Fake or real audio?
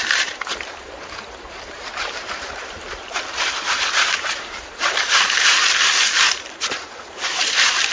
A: fake